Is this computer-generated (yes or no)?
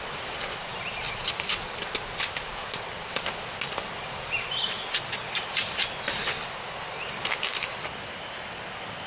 no